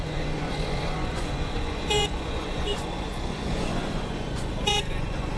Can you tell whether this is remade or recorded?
remade